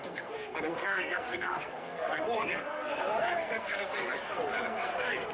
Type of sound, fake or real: fake